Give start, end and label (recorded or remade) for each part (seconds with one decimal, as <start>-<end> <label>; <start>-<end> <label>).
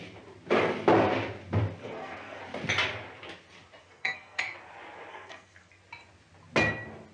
0.0-1.8 recorded; 1.8-2.4 remade; 2.4-3.8 recorded; 3.8-4.4 remade; 4.4-5.1 recorded; 5.1-5.7 remade; 5.7-7.1 recorded